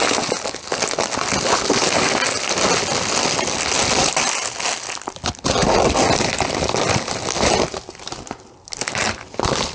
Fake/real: real